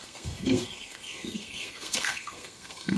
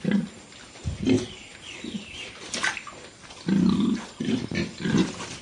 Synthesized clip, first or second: first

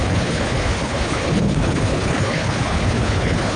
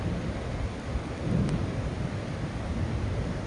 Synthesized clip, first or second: first